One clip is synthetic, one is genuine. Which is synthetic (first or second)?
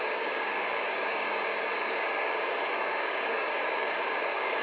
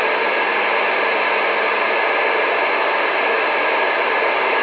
first